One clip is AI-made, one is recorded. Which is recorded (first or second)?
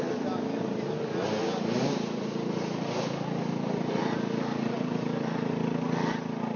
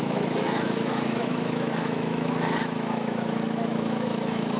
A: first